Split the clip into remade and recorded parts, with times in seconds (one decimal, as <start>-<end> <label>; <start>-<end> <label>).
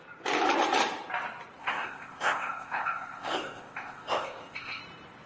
0.0-1.6 recorded; 1.6-4.8 remade; 4.8-5.3 recorded